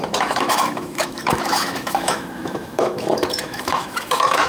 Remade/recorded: remade